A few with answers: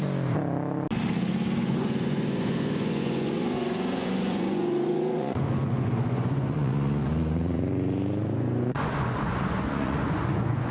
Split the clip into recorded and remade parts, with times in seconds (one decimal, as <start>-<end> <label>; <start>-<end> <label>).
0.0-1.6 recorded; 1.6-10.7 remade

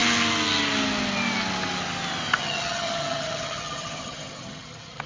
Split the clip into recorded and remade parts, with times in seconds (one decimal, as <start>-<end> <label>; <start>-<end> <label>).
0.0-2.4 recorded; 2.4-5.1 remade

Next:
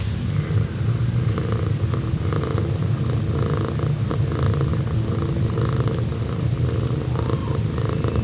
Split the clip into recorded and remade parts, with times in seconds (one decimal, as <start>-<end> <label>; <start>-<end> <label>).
0.0-7.4 recorded; 7.4-8.2 remade

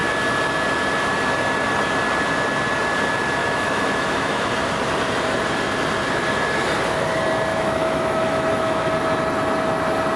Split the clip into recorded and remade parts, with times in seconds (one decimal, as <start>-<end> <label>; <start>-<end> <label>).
0.0-3.4 recorded; 3.4-4.5 remade; 4.5-7.5 recorded; 7.5-8.9 remade; 8.9-10.2 recorded

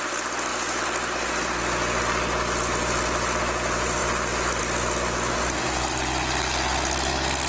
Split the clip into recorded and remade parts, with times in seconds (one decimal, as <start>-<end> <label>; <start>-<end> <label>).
0.0-7.5 recorded